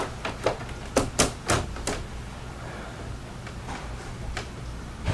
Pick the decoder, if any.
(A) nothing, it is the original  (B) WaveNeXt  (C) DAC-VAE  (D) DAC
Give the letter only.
A